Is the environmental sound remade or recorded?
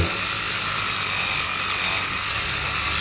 recorded